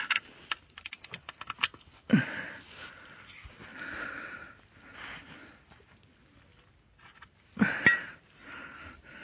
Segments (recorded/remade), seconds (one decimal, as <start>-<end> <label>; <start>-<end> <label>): 0.0-9.2 recorded